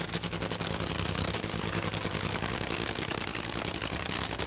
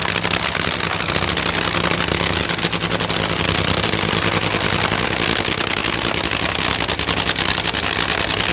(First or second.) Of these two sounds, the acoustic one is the second